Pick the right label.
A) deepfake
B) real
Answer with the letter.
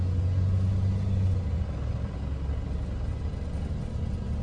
B